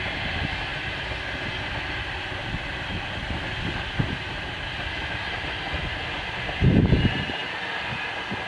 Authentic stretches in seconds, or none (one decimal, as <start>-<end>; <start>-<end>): 0.0-8.5